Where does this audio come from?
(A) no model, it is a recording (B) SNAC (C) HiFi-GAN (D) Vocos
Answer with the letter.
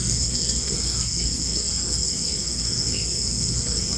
B